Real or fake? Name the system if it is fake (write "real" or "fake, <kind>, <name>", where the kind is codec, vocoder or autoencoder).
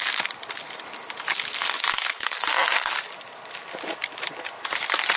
real